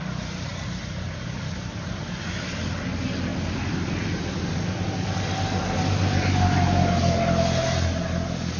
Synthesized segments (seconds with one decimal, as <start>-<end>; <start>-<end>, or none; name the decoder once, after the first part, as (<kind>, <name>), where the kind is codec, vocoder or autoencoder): 0.5-1.8 (vocoder, BigVGAN v2)